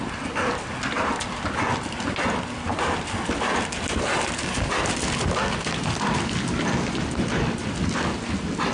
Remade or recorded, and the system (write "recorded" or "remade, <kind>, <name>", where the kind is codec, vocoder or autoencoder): recorded